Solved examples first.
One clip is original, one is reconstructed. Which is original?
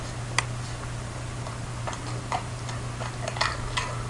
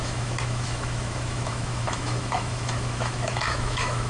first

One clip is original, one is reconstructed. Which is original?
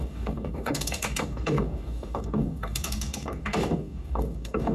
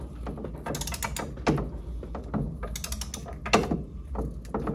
second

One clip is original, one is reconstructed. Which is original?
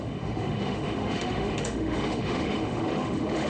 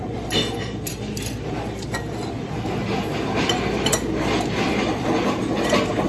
second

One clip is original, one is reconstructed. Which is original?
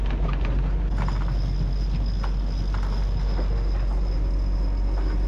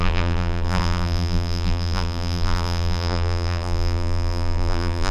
first